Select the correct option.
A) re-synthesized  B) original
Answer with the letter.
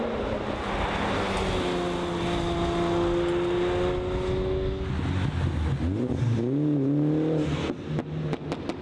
B